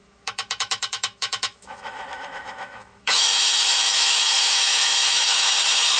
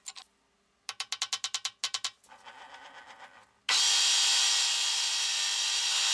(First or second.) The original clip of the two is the second